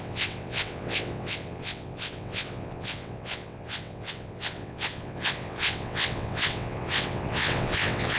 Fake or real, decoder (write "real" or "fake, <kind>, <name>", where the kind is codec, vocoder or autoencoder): fake, vocoder, WaveNeXt